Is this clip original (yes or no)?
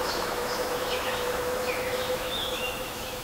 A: no